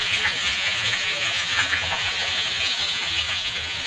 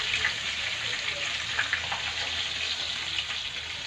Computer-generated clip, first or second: first